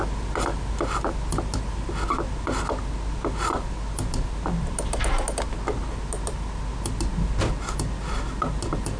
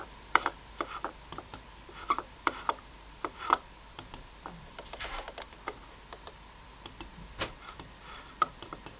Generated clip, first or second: second